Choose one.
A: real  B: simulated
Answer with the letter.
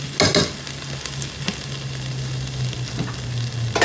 A